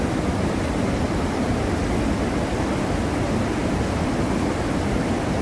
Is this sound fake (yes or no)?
no